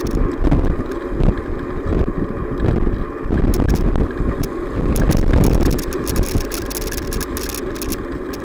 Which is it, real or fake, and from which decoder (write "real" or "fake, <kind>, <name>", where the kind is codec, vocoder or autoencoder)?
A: real